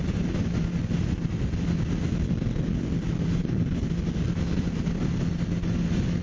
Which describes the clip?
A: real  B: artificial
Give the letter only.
A